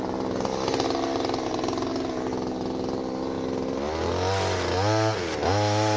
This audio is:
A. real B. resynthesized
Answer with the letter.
A